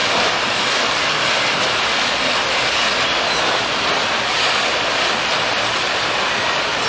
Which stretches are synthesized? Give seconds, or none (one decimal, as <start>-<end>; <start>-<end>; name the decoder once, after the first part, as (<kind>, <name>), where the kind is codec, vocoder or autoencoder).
none